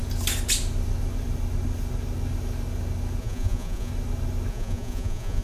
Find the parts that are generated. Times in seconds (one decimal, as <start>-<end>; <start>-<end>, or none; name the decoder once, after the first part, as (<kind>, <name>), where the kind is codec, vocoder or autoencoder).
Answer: 3.2-3.9 (vocoder, Vocos); 4.5-5.4